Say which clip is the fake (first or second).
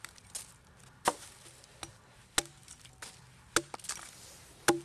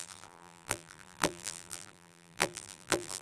second